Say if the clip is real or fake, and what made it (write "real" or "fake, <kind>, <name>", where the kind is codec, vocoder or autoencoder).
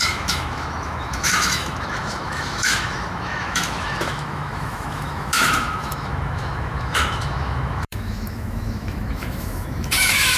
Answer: fake, autoencoder, DAC-VAE